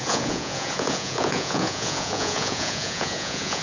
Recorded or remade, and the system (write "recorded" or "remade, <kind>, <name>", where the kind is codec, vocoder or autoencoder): remade, vocoder, Vocos